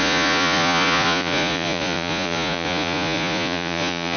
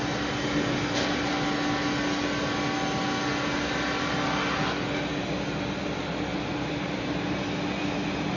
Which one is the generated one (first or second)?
first